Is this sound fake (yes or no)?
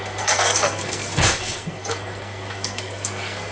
yes